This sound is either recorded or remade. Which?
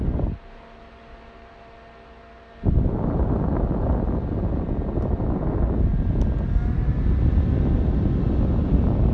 recorded